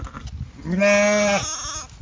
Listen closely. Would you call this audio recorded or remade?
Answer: recorded